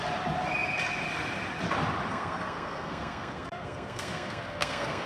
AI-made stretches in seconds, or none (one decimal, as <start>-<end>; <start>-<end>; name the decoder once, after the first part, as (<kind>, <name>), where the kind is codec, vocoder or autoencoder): 2.1-5.1 (codec, SNAC)